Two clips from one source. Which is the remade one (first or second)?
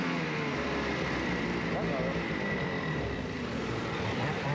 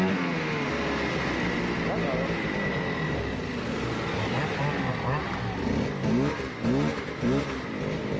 first